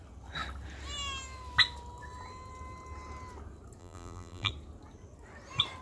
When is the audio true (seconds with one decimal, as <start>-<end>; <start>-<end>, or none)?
0.0-3.8; 4.5-5.8